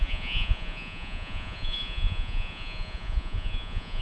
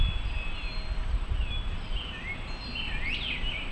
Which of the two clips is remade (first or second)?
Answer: first